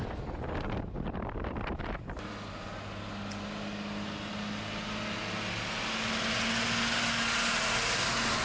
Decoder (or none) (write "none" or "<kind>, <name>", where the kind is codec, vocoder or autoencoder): none